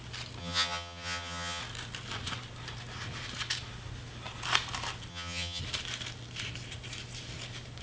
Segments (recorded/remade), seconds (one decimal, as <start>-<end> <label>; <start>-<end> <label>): 0.0-0.4 recorded; 0.4-1.6 remade; 1.6-5.1 recorded; 5.1-5.6 remade; 5.6-7.8 recorded